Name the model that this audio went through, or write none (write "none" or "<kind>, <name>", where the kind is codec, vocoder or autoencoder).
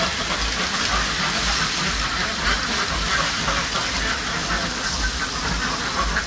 none